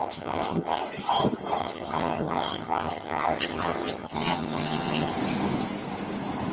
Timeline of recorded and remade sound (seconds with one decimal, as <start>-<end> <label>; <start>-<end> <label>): 0.0-0.8 remade; 0.8-1.6 recorded; 1.6-5.1 remade; 5.1-6.5 recorded